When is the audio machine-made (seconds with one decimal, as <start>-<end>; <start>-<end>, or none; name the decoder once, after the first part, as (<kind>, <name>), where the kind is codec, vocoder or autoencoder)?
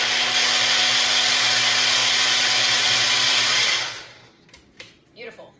2.0-5.6 (vocoder, BigVGAN v2)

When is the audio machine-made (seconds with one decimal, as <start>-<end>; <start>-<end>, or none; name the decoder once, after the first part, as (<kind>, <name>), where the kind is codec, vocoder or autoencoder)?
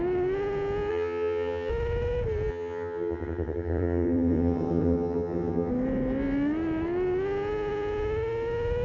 0.9-1.7 (vocoder, HiFi-GAN); 2.5-5.7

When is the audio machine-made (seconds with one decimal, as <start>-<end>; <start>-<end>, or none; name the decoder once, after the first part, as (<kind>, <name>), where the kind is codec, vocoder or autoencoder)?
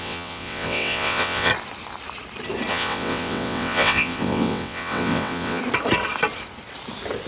0.0-1.5 (vocoder, WaveNeXt); 2.7-5.6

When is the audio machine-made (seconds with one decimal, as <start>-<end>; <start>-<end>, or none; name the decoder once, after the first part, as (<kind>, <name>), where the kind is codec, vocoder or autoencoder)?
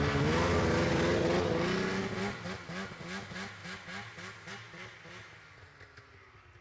none